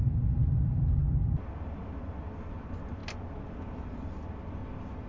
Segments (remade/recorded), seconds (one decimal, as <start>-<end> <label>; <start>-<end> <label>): 0.0-4.6 recorded; 4.6-5.1 remade